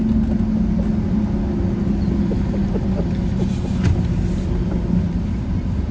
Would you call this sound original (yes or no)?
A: yes